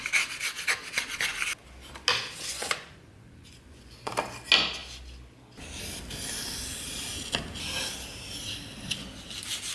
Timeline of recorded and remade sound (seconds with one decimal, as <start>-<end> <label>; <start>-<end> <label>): 0.0-2.5 recorded; 2.5-4.1 remade; 4.1-9.7 recorded